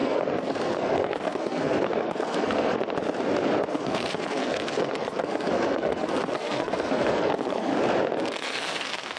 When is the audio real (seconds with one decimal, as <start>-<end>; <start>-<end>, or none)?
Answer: 2.8-3.6; 7.7-8.2